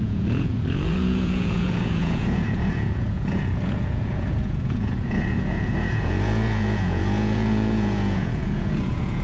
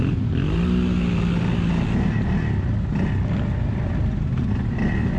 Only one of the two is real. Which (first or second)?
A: second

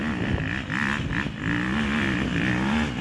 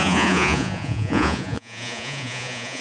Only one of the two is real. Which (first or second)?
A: first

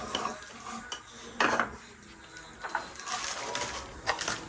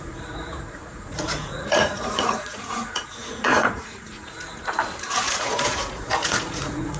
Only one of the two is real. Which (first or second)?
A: first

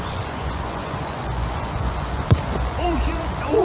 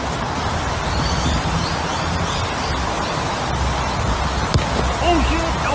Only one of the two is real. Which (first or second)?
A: second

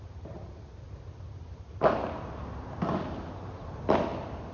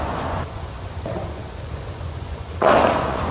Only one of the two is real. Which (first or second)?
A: first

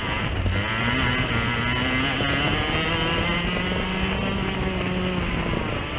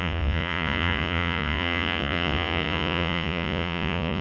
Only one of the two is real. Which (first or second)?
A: first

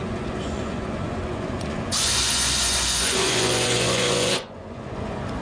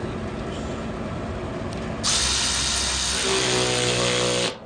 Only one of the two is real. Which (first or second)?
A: second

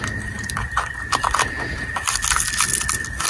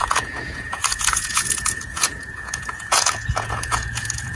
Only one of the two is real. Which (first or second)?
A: first